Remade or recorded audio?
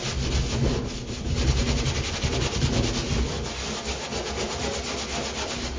recorded